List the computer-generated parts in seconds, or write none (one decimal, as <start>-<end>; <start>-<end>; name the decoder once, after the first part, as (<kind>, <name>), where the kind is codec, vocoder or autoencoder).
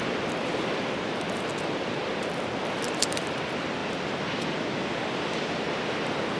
none